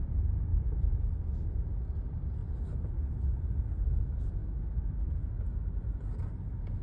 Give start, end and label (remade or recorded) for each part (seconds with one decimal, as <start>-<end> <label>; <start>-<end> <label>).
0.0-4.4 recorded; 4.4-5.1 remade; 5.1-6.8 recorded